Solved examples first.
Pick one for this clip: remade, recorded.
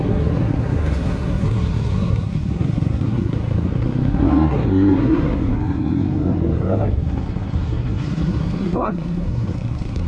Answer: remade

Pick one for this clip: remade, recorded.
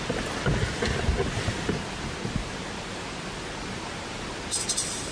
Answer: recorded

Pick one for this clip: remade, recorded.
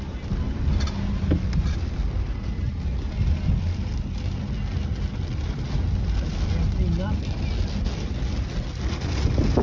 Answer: recorded